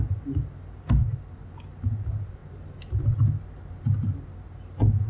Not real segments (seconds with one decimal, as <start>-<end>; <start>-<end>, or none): 1.0-1.5; 2.4-3.4